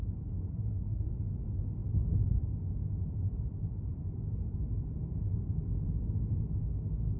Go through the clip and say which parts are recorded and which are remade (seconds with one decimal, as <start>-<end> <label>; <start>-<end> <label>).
0.0-0.5 recorded; 0.5-1.1 remade; 1.1-7.2 recorded